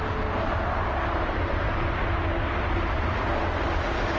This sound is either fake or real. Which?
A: real